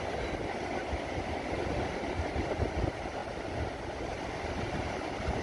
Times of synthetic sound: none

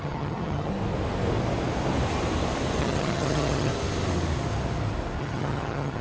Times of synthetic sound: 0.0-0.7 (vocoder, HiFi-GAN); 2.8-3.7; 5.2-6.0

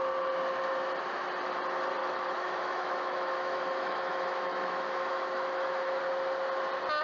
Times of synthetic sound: 2.0-6.0 (autoencoder, DAC-VAE)